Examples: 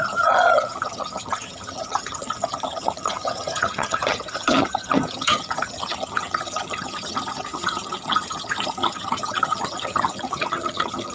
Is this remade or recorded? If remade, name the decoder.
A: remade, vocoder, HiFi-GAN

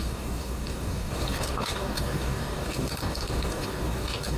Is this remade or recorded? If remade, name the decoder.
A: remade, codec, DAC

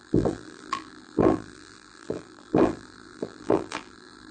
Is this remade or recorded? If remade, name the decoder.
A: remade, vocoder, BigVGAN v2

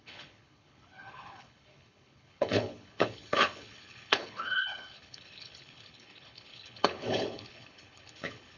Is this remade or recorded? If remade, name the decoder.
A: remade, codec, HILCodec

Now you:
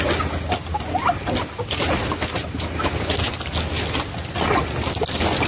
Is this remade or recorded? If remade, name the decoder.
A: recorded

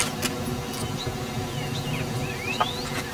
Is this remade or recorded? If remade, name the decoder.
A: recorded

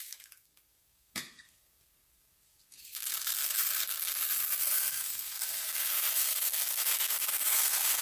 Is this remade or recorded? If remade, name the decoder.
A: remade, codec, SNAC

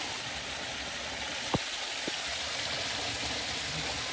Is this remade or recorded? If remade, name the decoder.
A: recorded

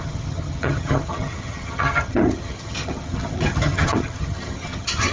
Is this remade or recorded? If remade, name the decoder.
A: remade, vocoder, HiFi-GAN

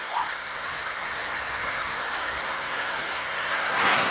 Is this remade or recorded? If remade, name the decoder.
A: remade, codec, SNAC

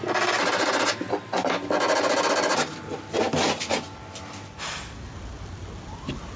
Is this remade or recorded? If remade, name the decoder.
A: recorded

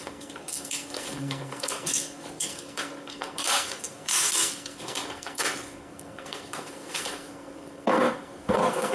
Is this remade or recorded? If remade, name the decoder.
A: remade, codec, SNAC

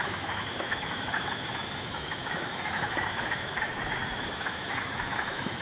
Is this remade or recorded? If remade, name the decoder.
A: remade, autoencoder, DAC-VAE